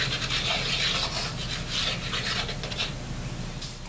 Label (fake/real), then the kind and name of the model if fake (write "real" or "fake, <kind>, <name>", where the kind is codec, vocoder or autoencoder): real